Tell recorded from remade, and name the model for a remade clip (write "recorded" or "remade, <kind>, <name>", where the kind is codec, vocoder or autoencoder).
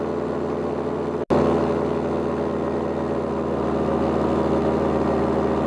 recorded